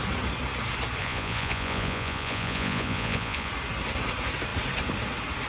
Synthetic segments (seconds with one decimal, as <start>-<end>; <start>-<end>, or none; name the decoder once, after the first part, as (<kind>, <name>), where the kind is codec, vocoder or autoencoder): 1.0-3.5 (vocoder, Vocos)